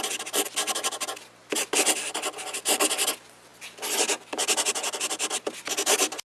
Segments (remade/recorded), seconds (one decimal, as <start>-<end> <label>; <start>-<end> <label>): 0.0-6.4 recorded